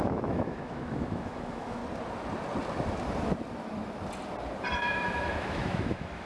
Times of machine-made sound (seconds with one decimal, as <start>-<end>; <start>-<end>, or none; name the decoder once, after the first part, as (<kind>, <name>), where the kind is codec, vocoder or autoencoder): 0.0-1.8 (autoencoder, DAC-VAE); 4.8-6.3